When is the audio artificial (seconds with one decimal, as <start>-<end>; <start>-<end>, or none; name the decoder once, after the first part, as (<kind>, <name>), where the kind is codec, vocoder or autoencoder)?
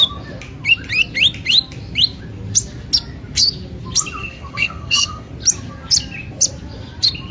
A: 4.2-5.3 (codec, SNAC)